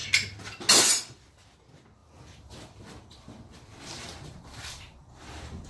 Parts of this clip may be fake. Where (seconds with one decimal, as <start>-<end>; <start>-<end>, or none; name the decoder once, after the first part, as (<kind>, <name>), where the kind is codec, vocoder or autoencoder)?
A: 2.0-5.7 (vocoder, BigVGAN v2)